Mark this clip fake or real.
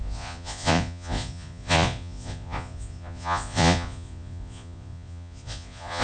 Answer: fake